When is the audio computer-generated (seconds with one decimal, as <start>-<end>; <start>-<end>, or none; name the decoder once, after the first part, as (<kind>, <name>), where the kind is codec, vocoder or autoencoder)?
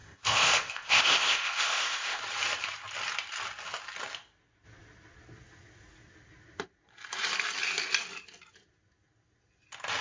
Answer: 0.0-2.2 (codec, ZipCodec)